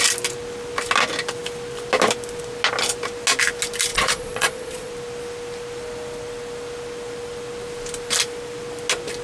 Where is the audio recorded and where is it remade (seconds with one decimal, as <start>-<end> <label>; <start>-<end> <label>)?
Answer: 0.0-3.9 recorded; 3.9-4.9 remade; 4.9-9.2 recorded